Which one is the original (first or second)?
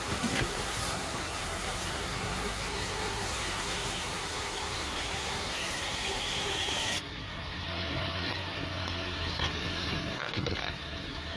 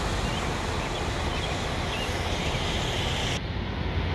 second